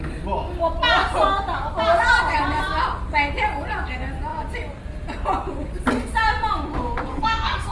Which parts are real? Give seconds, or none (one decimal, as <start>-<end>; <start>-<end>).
0.0-7.1